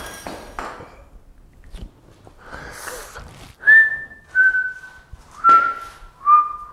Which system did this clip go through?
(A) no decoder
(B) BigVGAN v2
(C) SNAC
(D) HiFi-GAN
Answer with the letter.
A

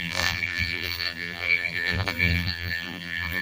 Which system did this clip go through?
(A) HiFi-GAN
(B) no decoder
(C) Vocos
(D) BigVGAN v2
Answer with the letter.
D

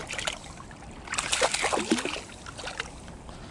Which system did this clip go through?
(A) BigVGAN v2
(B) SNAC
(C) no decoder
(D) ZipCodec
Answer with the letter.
C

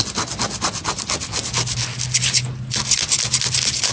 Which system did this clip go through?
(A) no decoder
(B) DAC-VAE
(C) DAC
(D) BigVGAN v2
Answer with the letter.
A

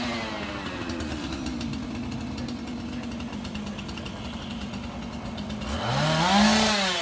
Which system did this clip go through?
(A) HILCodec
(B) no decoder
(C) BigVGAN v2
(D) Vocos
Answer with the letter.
B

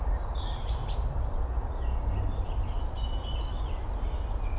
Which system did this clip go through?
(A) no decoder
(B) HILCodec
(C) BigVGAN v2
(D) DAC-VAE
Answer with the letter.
A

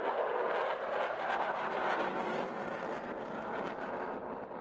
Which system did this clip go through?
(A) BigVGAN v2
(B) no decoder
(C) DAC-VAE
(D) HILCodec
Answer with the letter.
B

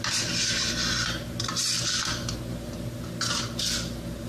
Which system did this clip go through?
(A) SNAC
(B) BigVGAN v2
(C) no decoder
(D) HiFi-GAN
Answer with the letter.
B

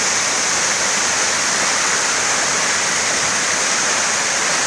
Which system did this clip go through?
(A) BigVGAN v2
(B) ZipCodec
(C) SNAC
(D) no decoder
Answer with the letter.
D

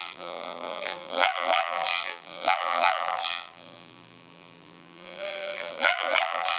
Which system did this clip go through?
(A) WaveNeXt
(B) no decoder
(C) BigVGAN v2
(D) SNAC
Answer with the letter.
C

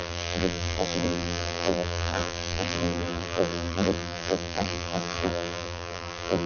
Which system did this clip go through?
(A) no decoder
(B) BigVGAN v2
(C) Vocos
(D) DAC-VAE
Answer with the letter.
B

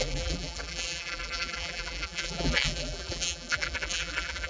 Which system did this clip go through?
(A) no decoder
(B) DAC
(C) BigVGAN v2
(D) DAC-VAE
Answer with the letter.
C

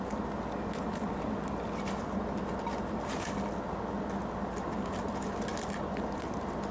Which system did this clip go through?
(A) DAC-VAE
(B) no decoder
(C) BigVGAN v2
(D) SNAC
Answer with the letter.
B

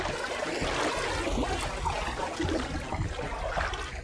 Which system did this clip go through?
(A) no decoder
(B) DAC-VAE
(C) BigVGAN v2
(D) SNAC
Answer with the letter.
A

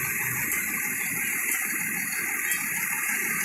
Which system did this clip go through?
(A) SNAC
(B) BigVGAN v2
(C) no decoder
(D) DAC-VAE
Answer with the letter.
C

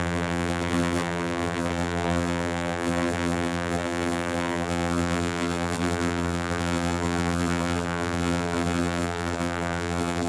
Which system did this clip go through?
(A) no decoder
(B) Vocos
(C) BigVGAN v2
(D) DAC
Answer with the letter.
C